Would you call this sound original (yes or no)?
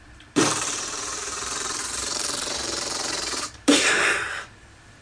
no